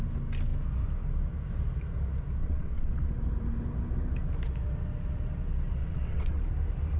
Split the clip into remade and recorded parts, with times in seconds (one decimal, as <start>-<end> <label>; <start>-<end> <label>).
0.0-2.4 recorded; 2.4-3.1 remade; 3.1-5.8 recorded; 5.8-6.4 remade; 6.4-7.0 recorded